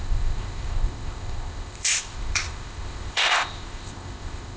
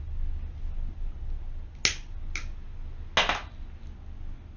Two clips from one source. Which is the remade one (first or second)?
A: first